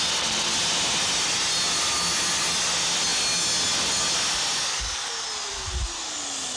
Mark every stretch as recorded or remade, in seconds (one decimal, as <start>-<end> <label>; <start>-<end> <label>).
0.0-6.6 recorded